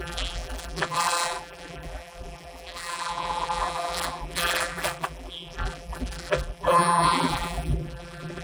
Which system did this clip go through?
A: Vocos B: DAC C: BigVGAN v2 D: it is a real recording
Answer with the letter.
C